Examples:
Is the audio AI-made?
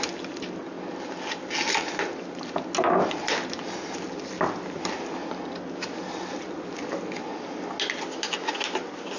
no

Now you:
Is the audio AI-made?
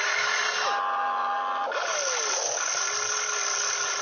no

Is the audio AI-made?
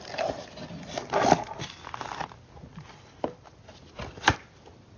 no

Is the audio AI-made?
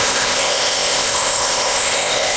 yes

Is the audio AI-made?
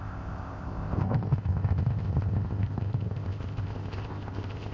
yes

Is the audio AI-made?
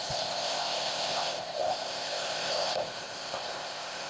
yes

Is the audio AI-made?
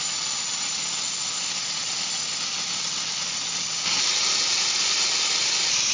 no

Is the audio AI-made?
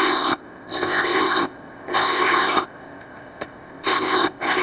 yes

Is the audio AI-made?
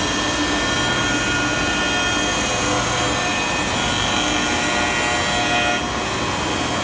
no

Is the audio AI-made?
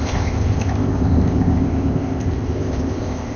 yes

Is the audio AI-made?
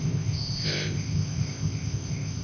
yes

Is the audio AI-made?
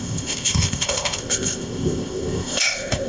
yes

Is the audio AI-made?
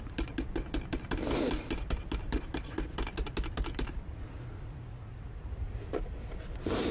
no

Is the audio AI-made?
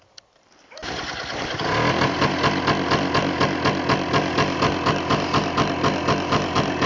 no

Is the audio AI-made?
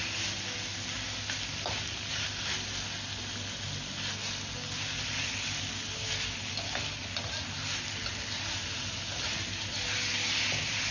no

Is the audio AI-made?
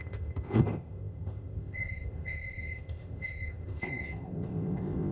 yes